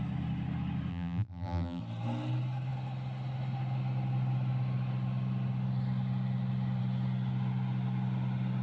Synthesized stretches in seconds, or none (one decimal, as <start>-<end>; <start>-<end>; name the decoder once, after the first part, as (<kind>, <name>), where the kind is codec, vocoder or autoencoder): 0.9-1.8 (vocoder, BigVGAN v2)